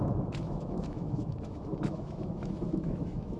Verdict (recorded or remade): remade